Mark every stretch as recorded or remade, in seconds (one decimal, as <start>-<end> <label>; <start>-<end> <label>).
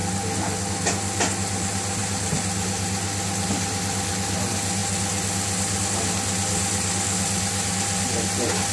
0.0-8.7 recorded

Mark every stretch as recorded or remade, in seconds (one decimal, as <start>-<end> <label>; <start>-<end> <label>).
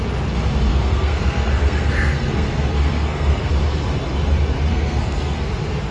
0.0-0.7 recorded; 0.7-3.5 remade; 3.5-4.7 recorded; 4.7-5.5 remade; 5.5-5.9 recorded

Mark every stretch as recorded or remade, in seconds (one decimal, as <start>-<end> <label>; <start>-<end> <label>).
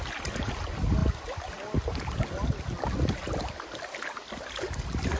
0.0-5.2 recorded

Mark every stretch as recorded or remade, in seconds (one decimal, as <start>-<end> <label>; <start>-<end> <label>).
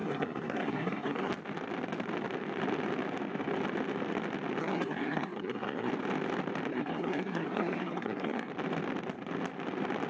0.0-1.3 remade; 1.3-4.6 recorded; 4.6-5.9 remade; 5.9-6.7 recorded; 6.7-8.5 remade; 8.5-10.1 recorded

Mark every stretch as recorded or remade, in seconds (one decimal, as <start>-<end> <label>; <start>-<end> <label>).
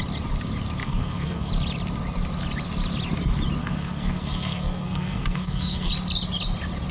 0.0-0.8 recorded; 0.8-1.5 remade; 1.5-3.6 recorded; 3.6-5.9 remade; 5.9-6.9 recorded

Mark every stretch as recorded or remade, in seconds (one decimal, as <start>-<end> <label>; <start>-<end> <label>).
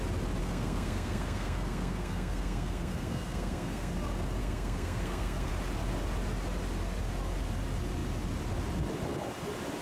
0.0-0.4 recorded; 0.4-3.9 remade; 3.9-4.4 recorded; 4.4-5.5 remade; 5.5-9.8 recorded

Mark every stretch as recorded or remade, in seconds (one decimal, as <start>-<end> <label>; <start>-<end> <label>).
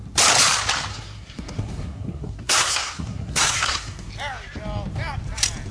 0.0-0.9 recorded; 0.9-4.1 remade; 4.1-5.7 recorded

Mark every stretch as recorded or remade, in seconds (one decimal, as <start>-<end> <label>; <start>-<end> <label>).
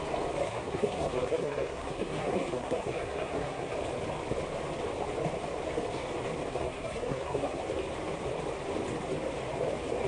0.0-0.4 recorded; 0.4-3.7 remade; 3.7-6.5 recorded; 6.5-7.6 remade; 7.6-10.1 recorded